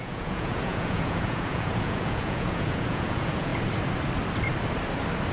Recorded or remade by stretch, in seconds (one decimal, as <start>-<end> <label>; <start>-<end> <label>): 0.0-3.5 remade; 3.5-5.3 recorded